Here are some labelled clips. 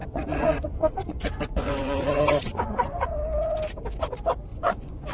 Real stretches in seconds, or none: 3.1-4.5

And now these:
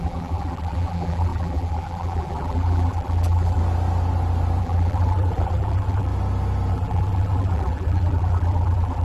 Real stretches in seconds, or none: 3.6-4.6; 6.1-6.7

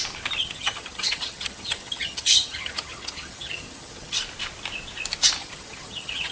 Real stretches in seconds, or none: 0.0-0.4; 4.2-5.4

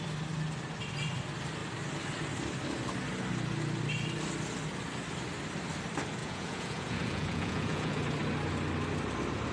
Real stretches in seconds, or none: 0.0-6.2; 8.0-9.5

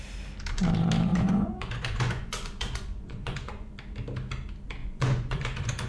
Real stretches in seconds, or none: 0.0-1.1; 3.7-4.8